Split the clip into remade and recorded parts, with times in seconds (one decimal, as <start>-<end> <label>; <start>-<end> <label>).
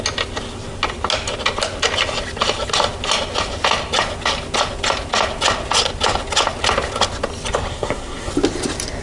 0.0-7.7 recorded; 7.7-8.3 remade; 8.3-9.0 recorded